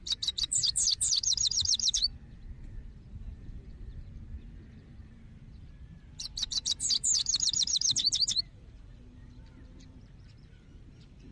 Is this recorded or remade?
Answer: remade